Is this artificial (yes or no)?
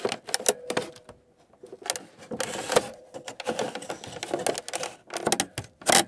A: no